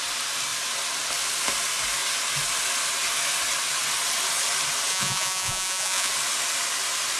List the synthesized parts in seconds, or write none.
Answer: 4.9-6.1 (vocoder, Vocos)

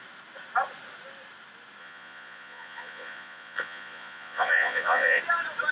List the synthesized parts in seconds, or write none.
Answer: 1.8-5.2 (vocoder, Vocos)

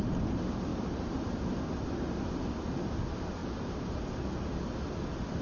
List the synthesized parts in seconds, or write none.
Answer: none

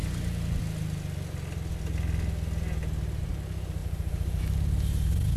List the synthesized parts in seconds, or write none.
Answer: 3.8-4.4 (vocoder, BigVGAN v2)

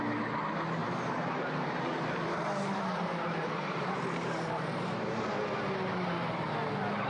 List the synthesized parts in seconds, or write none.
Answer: 0.8-5.1 (vocoder, BigVGAN v2)